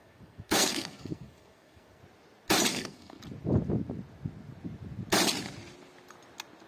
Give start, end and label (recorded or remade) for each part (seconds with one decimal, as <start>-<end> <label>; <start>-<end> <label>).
0.0-2.0 remade; 2.0-2.7 recorded; 2.7-3.2 remade; 3.2-6.7 recorded